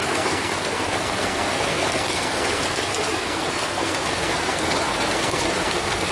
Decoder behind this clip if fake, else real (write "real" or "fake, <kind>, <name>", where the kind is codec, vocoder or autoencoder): fake, codec, SNAC